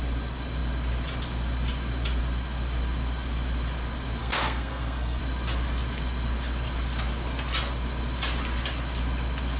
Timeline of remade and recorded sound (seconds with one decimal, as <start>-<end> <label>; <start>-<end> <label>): 0.0-4.2 recorded; 4.2-5.2 remade; 5.2-9.6 recorded